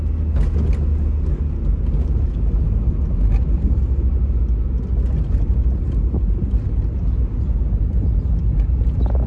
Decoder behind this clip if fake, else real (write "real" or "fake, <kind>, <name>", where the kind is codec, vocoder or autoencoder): real